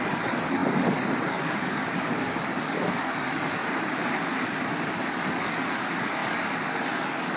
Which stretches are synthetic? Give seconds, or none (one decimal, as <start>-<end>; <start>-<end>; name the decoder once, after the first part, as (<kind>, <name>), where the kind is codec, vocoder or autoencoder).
0.0-3.6 (codec, DAC); 5.1-7.4

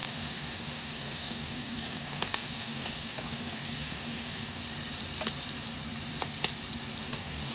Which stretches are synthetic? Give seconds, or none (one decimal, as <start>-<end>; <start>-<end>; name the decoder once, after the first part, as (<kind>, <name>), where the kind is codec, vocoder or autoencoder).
0.0-4.6 (codec, DAC); 7.0-7.5

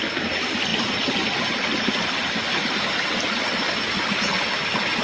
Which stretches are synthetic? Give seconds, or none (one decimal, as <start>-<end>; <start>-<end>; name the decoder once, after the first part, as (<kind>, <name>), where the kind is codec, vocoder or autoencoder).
none

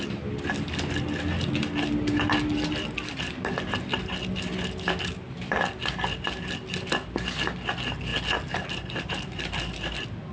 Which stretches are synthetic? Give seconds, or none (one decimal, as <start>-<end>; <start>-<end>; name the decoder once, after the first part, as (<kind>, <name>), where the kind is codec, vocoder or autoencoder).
none

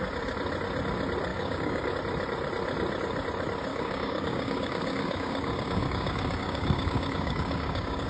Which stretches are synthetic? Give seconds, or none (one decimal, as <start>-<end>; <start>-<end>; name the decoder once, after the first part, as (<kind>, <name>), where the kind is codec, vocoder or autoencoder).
1.3-1.9 (codec, DAC); 3.7-8.1

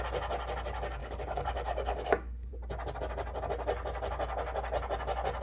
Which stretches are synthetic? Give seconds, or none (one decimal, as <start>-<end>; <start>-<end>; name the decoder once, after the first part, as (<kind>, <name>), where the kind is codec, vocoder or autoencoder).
1.0-2.5 (codec, DAC)

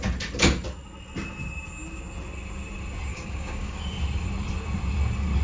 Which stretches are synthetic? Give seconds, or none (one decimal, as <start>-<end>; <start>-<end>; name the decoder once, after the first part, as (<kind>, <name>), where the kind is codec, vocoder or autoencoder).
3.1-3.8 (codec, DAC)